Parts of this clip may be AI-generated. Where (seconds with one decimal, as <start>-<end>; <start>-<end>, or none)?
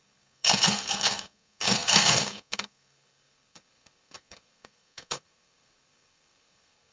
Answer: 0.0-6.9